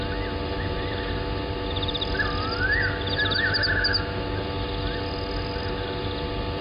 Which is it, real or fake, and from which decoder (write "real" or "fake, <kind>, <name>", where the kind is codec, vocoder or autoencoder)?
real